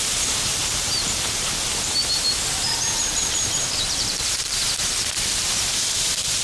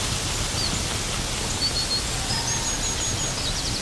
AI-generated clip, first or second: first